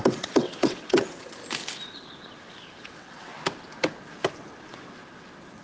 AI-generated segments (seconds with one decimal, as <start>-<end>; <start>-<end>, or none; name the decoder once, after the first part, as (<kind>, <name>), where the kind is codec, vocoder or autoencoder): 0.0-1.4 (vocoder, WaveNeXt); 2.8-3.3